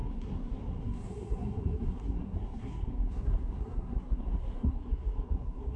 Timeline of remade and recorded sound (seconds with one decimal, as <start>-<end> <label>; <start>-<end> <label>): 0.0-5.8 remade